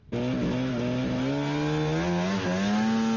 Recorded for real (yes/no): yes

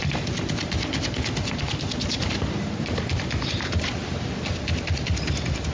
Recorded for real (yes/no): yes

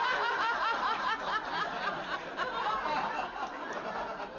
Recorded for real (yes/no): yes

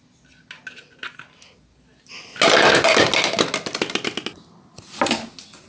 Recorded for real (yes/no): yes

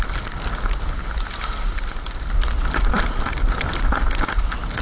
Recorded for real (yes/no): yes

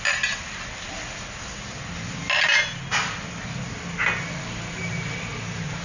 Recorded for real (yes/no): yes